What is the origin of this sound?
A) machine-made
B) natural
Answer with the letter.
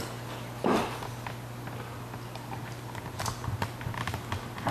B